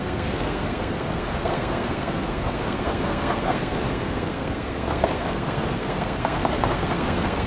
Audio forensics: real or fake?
fake